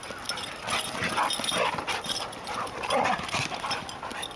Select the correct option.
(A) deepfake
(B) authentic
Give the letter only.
B